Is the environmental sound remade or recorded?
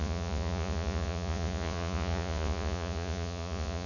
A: remade